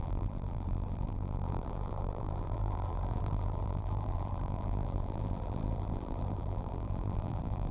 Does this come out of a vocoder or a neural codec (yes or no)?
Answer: yes